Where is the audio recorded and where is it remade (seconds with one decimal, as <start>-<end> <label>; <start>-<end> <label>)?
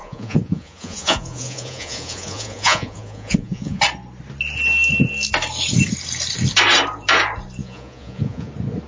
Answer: 0.0-3.8 remade; 3.8-7.6 recorded; 7.6-8.5 remade; 8.5-8.9 recorded